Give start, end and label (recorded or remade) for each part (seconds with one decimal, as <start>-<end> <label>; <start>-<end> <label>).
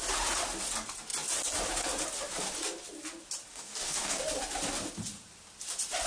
0.0-3.5 recorded; 3.5-4.2 remade; 4.2-6.1 recorded